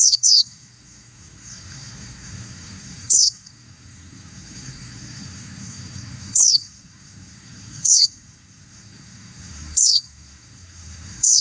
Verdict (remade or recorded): remade